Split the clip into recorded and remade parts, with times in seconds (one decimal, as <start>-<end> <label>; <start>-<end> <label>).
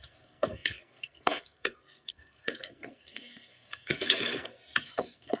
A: 0.0-5.4 remade